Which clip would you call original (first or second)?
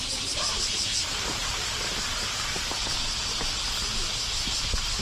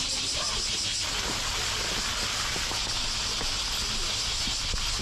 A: second